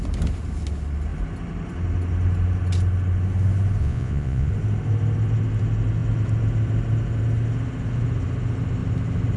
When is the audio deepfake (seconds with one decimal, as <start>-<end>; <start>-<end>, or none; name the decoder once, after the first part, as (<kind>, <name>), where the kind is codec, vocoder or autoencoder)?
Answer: 3.8-4.5 (vocoder, Vocos)